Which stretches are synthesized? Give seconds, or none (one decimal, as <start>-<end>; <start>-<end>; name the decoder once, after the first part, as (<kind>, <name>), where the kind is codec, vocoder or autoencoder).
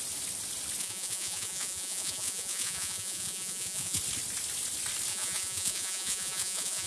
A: 0.8-4.0 (vocoder, Vocos); 5.1-6.9